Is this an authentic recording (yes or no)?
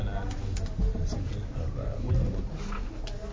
yes